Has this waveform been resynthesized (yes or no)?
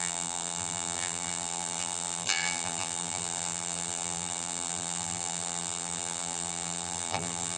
yes